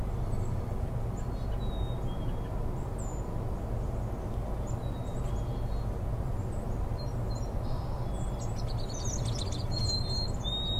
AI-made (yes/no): no